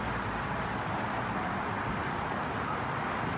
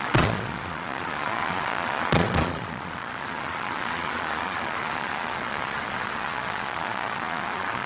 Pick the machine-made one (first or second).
second